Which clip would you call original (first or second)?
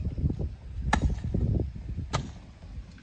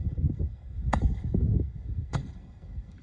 first